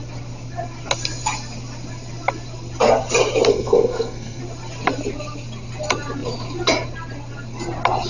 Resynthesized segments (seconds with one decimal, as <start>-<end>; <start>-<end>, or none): 3.5-4.4